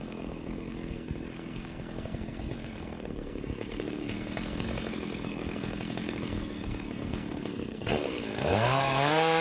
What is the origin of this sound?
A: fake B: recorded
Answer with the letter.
A